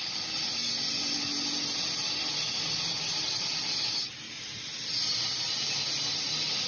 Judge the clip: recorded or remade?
recorded